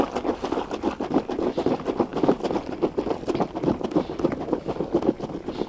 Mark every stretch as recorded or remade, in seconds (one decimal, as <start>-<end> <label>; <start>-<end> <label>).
0.0-5.7 recorded